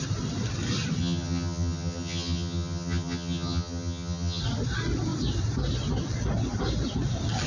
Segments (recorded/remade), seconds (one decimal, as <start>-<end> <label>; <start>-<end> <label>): 0.0-1.0 recorded; 1.0-4.4 remade; 4.4-7.5 recorded